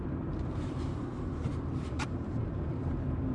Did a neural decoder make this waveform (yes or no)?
yes